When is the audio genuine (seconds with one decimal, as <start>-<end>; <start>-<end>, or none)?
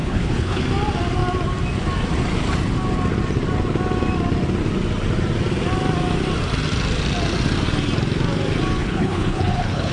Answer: 0.6-8.8